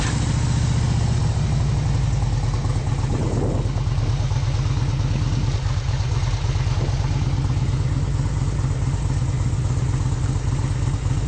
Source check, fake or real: real